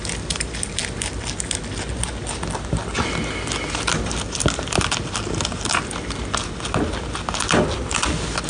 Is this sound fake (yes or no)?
no